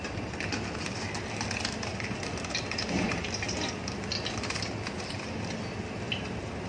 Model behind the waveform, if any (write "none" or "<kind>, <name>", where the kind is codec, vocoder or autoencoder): none